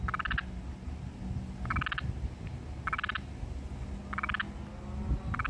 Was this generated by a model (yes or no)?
no